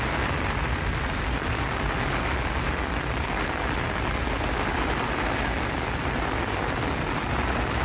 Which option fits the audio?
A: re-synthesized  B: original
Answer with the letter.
B